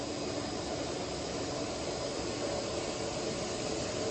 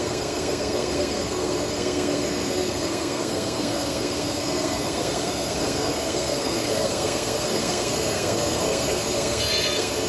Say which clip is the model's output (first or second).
second